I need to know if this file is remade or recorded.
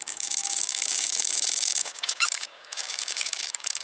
remade